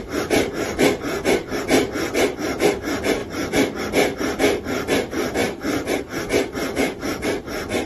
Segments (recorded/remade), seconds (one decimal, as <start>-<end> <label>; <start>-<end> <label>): 0.0-7.8 recorded